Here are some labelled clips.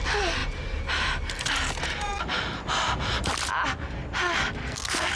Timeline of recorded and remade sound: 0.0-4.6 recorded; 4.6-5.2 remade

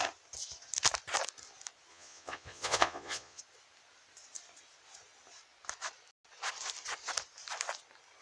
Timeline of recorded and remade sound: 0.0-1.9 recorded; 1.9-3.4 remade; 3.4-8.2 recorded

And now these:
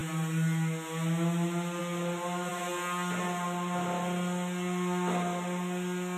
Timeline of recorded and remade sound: 0.0-6.2 recorded

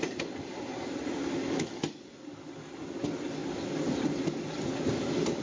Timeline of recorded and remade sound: 0.0-1.4 recorded; 1.4-1.9 remade; 1.9-5.4 recorded